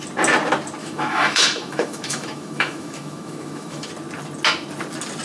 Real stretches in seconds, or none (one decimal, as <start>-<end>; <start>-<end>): 0.0-0.8; 3.9-5.2